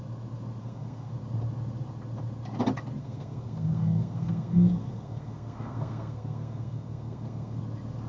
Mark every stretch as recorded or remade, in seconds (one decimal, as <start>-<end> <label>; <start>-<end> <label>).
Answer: 0.0-0.6 recorded; 0.6-1.1 remade; 1.1-3.0 recorded; 3.0-7.6 remade; 7.6-8.1 recorded